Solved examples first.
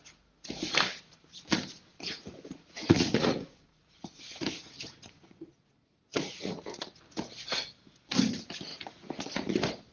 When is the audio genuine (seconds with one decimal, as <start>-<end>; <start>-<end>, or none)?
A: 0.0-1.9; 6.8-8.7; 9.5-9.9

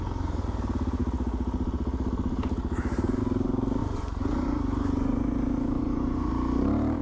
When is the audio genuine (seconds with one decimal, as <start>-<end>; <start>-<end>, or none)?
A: 0.0-3.8; 6.3-7.0

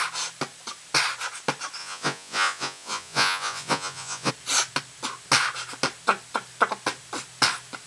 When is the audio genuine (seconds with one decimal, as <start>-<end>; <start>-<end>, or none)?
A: 0.0-1.8; 4.3-7.9